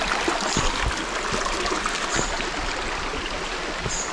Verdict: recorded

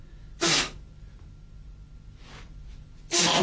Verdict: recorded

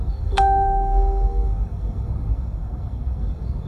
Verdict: remade